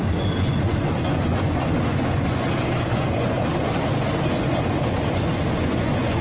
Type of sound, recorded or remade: remade